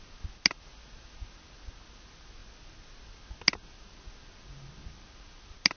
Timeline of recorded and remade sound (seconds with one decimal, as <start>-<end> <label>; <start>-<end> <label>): 0.0-5.8 recorded